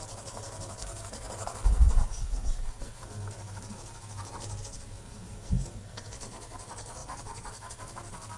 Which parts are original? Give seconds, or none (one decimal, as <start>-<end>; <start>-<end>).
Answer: none